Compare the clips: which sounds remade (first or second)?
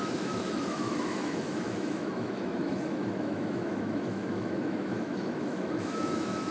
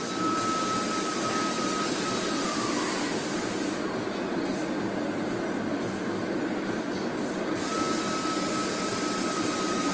first